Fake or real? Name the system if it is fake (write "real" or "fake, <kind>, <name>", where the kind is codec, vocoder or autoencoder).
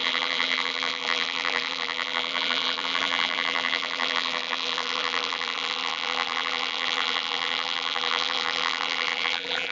fake, vocoder, BigVGAN v2